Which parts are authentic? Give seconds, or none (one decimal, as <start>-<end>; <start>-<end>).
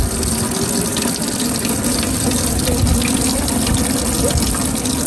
0.0-0.9; 3.7-5.1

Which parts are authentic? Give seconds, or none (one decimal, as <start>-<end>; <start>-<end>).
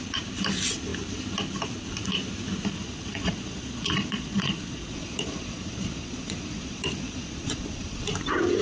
0.0-2.8; 8.0-8.6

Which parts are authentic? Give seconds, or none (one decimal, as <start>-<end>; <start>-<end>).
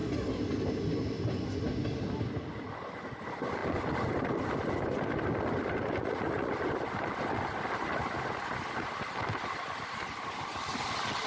0.0-6.0; 6.5-11.3